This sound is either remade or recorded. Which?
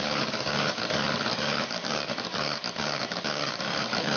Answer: remade